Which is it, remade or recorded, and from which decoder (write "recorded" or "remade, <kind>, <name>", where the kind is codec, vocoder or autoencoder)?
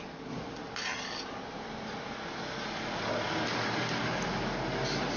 recorded